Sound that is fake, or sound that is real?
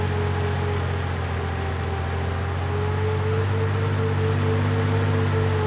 real